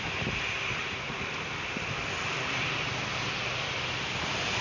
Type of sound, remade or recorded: recorded